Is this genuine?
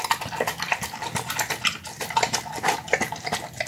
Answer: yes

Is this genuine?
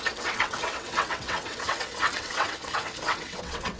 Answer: no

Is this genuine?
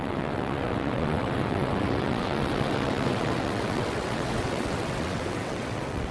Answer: no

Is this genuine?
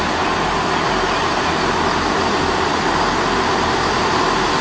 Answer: yes